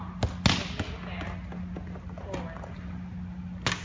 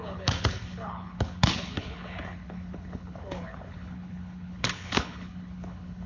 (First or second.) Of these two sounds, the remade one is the second